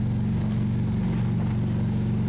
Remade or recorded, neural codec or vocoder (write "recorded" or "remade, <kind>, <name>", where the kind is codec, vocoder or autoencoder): recorded